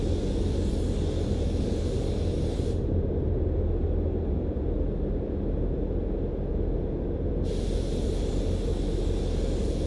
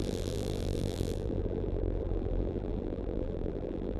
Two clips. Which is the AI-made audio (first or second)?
second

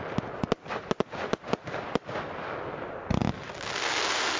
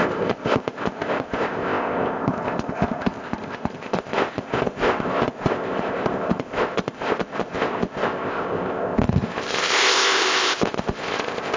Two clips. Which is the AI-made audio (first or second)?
second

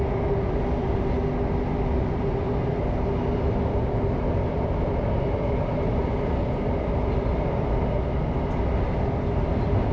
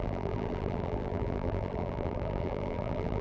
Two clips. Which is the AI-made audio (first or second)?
second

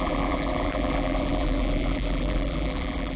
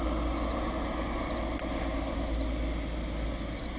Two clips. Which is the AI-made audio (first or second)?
first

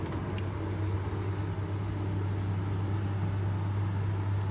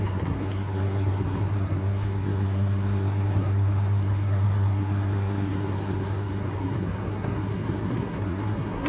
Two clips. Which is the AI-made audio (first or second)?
second